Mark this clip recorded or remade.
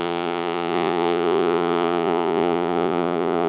remade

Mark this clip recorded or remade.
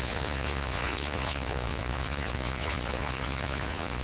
remade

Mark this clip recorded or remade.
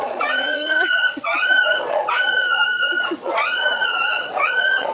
remade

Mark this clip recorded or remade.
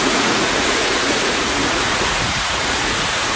remade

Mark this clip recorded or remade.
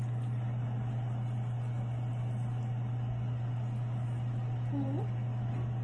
recorded